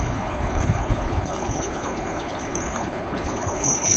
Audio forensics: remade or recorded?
remade